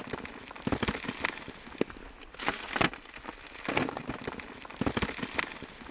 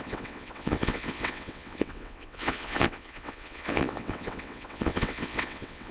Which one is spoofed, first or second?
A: second